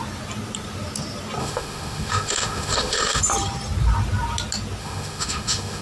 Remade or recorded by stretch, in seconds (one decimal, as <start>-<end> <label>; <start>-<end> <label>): 0.0-1.4 recorded; 1.4-3.2 remade; 3.2-4.8 recorded; 4.8-5.8 remade